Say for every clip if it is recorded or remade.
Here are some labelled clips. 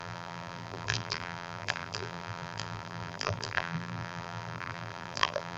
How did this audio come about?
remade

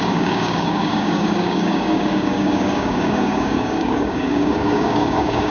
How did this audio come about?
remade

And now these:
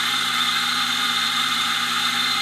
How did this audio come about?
remade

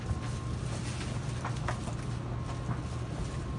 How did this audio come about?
recorded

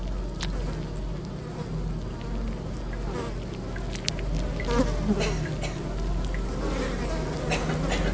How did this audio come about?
recorded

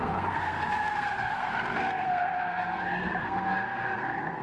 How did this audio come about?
remade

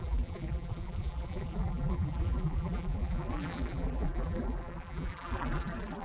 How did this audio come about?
remade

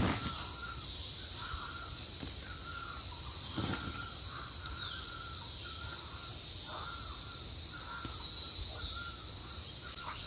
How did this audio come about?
recorded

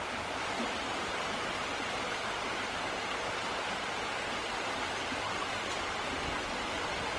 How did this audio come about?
recorded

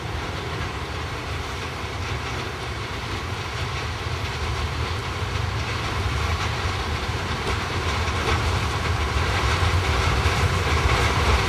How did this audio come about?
remade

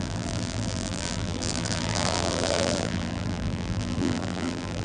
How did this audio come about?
remade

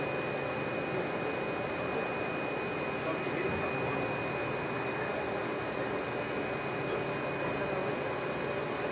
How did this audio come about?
recorded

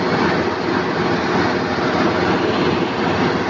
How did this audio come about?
recorded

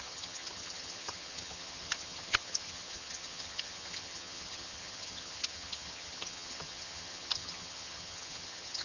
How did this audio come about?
remade